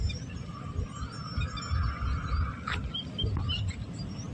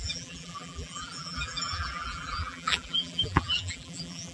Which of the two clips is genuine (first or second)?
first